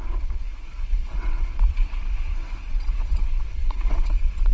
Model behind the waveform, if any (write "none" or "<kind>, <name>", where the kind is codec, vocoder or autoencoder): vocoder, WaveNeXt